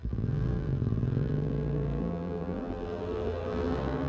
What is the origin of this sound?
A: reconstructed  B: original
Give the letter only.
A